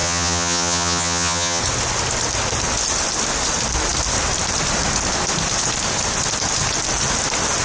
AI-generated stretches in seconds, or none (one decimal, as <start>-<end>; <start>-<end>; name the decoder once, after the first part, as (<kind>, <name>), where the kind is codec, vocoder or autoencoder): 0.0-1.6 (vocoder, HiFi-GAN)